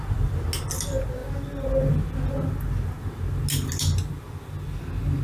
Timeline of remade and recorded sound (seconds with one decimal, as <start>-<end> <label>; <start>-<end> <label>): 0.0-5.2 recorded

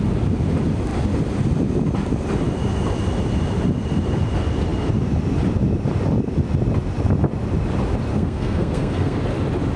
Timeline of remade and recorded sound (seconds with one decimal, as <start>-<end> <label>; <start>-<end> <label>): 0.0-8.1 recorded; 8.1-9.2 remade; 9.2-9.8 recorded

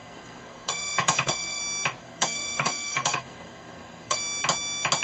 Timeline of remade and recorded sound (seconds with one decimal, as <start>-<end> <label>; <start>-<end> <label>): 0.0-1.6 remade; 1.6-2.0 recorded; 2.0-4.2 remade; 4.2-5.0 recorded

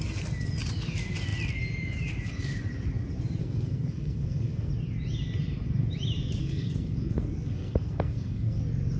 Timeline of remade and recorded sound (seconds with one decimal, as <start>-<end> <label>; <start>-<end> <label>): 0.0-3.4 recorded; 3.4-4.7 remade; 4.7-6.4 recorded; 6.4-8.6 remade; 8.6-9.0 recorded

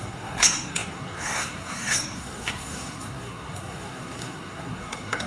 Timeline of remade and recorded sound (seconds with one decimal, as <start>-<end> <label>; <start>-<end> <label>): 0.0-5.3 remade

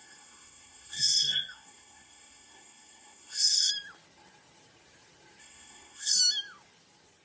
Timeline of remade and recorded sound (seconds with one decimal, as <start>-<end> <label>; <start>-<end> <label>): 0.0-3.7 remade; 3.7-5.4 recorded; 5.4-6.2 remade; 6.2-7.2 recorded

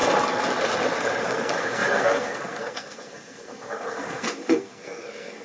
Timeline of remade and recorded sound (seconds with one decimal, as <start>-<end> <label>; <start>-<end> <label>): 0.0-1.2 recorded; 1.2-5.4 remade

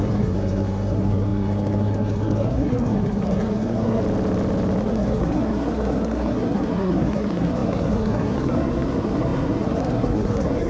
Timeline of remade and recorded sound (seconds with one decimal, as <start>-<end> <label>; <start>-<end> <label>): 0.0-4.0 remade; 4.0-4.8 recorded; 4.8-10.7 remade